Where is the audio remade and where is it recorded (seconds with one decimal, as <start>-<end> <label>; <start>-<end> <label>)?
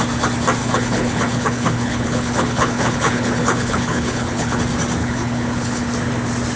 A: 0.0-0.6 recorded; 0.6-4.6 remade; 4.6-5.0 recorded; 5.0-5.9 remade; 5.9-6.6 recorded